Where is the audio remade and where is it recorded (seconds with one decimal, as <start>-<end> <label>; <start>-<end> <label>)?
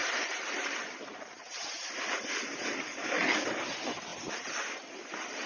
0.0-1.9 remade; 1.9-5.5 recorded